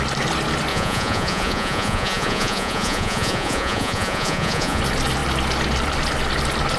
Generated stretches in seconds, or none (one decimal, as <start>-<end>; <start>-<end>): 0.7-4.8